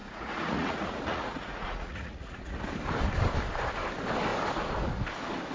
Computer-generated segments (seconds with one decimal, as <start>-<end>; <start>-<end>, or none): 0.0-2.6